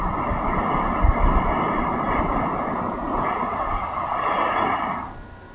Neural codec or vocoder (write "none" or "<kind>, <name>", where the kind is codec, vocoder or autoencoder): none